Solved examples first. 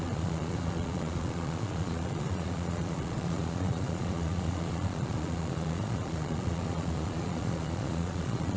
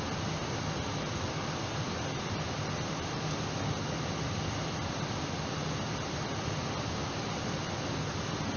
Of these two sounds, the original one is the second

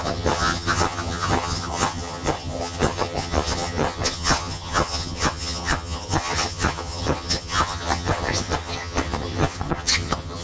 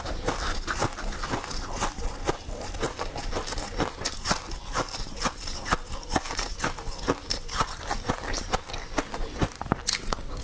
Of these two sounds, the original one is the second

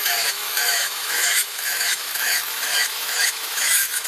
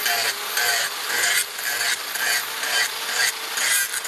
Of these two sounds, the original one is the second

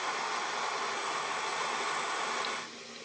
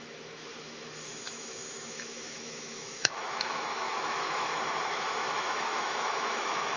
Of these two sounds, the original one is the first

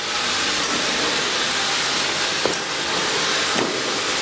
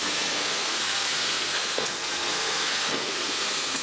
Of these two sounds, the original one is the first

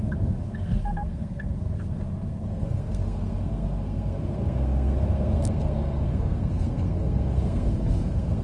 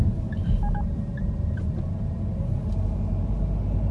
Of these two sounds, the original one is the second